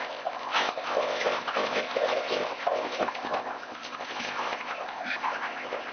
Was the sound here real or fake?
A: fake